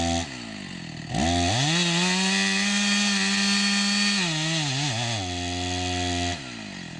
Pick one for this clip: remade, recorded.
recorded